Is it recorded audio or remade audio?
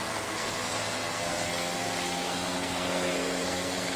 remade